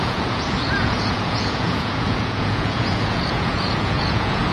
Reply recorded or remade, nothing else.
remade